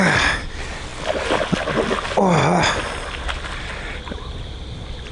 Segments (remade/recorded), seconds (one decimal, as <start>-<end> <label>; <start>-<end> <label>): 0.0-5.1 recorded